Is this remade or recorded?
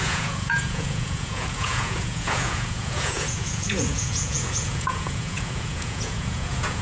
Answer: remade